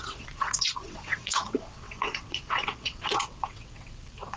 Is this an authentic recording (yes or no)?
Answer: no